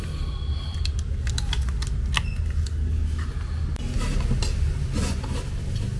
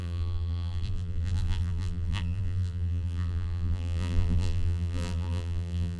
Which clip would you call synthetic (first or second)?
second